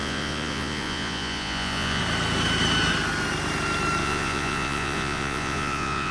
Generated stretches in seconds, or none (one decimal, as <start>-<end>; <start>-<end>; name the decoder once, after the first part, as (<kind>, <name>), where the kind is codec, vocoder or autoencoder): 0.0-2.0 (vocoder, Vocos); 4.0-6.1